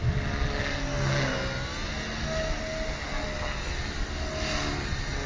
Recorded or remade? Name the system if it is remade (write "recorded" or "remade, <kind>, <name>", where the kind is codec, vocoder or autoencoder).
recorded